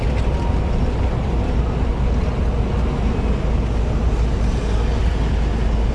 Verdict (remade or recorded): recorded